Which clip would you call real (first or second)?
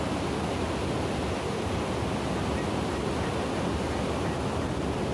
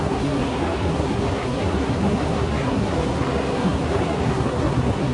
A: first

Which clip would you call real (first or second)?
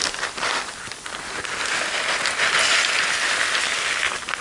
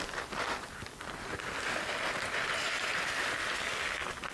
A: second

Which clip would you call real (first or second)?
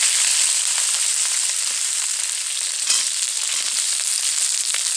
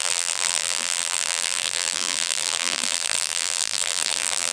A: first